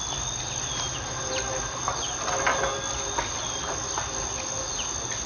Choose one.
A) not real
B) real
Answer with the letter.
B